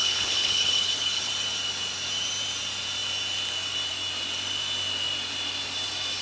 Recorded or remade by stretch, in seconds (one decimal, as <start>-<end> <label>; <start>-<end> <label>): 0.0-1.3 remade; 1.3-6.2 recorded

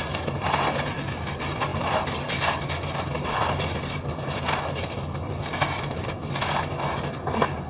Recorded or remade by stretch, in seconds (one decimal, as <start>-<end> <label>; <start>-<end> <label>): 0.0-7.7 recorded

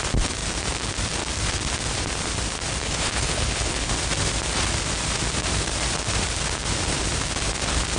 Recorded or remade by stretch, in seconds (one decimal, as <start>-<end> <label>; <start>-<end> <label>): 0.0-2.8 recorded; 2.8-3.9 remade; 3.9-8.0 recorded

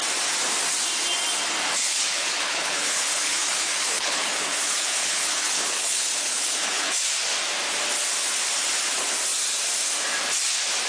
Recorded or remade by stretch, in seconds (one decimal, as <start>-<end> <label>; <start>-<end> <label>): 0.0-1.8 recorded; 1.8-7.0 remade; 7.0-10.9 recorded